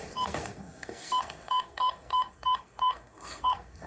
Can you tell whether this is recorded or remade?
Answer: remade